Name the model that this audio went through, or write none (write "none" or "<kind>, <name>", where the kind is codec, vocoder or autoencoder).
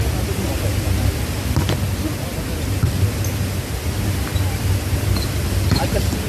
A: none